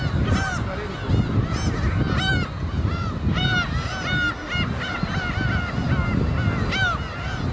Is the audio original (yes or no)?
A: yes